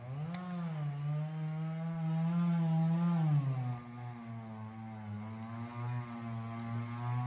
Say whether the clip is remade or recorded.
recorded